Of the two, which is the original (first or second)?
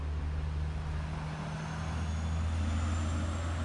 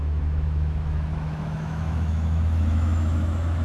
first